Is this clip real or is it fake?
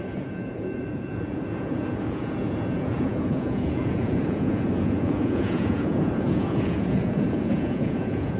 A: fake